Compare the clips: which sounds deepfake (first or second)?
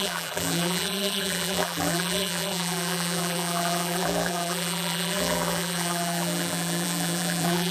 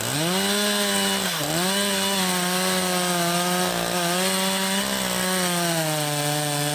first